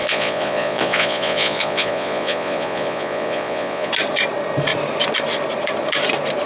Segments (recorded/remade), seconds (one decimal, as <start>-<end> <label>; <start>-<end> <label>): 0.0-3.9 remade; 3.9-6.5 recorded